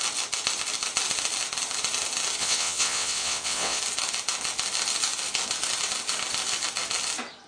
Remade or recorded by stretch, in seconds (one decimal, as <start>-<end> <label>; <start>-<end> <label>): 0.0-2.4 recorded; 2.4-3.8 remade; 3.8-7.5 recorded